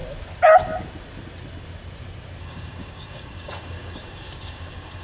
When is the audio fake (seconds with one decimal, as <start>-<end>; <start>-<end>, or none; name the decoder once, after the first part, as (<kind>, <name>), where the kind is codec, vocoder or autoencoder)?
2.4-5.0 (codec, DAC)